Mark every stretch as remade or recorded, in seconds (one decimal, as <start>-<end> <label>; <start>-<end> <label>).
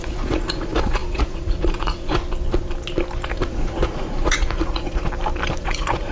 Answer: 0.0-2.2 remade; 2.2-3.3 recorded; 3.3-5.1 remade; 5.1-5.6 recorded; 5.6-6.1 remade